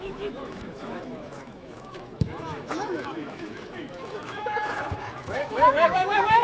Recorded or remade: remade